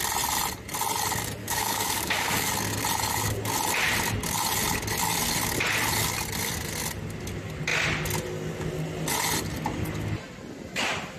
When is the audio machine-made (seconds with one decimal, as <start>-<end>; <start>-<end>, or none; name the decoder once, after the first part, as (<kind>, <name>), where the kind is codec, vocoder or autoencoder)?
1.4-2.5 (codec, DAC)